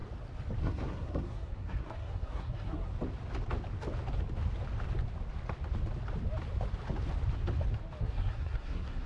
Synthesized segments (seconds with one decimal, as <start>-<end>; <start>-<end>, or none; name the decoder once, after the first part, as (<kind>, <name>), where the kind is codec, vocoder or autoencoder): 0.6-2.9 (codec, SNAC); 8.0-9.1